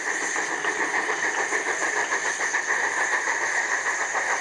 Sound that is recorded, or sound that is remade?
recorded